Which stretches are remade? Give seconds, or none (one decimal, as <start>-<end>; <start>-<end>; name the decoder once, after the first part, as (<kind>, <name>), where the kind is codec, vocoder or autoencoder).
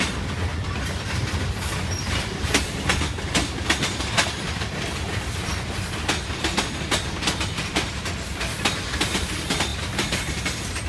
0.0-10.9 (vocoder, BigVGAN v2)